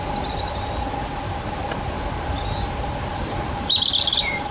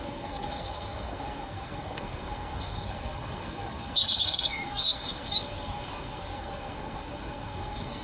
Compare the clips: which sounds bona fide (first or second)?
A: first